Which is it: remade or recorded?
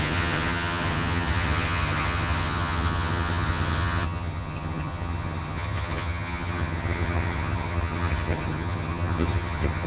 remade